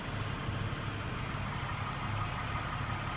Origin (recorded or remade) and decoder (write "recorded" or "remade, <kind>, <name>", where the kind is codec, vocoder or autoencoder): recorded